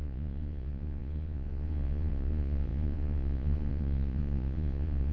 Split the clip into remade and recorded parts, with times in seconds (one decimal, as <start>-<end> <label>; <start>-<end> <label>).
0.0-5.1 remade